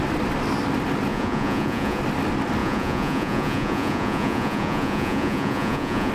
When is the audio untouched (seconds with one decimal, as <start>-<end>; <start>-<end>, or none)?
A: 0.0-1.1; 2.0-2.6